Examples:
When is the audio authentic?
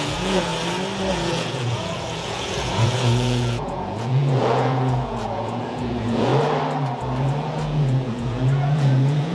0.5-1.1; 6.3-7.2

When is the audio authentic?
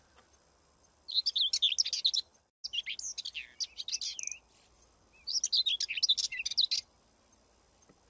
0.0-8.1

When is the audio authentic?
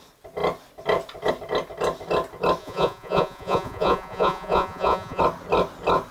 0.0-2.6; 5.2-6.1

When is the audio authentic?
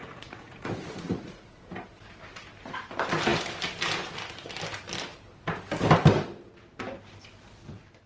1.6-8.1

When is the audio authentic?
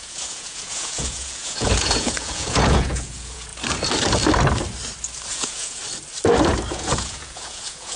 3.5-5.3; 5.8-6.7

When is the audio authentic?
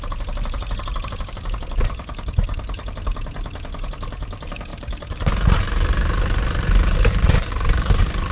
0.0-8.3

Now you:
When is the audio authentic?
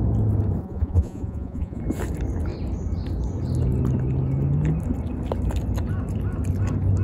0.0-0.6; 1.8-7.0